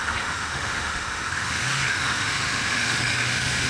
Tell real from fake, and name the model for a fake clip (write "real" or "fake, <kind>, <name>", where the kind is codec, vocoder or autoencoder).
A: fake, autoencoder, DAC-VAE